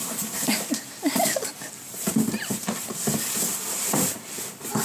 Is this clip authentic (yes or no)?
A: yes